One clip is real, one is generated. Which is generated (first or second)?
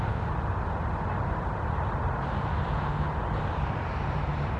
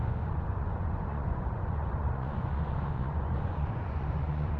second